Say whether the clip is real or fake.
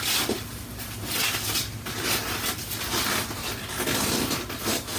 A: real